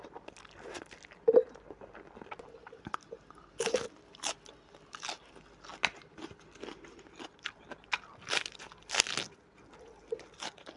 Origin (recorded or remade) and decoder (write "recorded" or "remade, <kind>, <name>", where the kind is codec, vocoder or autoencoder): recorded